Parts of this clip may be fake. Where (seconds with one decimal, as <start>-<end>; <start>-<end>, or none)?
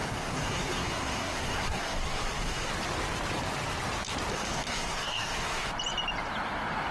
0.0-2.7; 4.3-5.7